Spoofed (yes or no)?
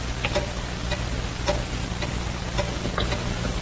no